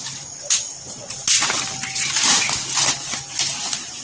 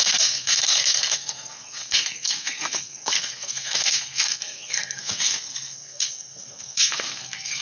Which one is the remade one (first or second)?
second